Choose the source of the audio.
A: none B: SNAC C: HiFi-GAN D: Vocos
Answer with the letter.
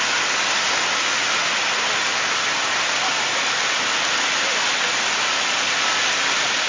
A